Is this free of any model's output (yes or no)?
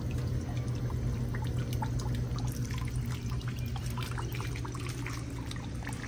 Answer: yes